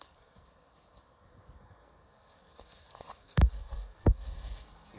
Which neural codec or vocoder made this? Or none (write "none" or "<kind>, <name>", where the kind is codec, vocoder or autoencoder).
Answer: codec, SNAC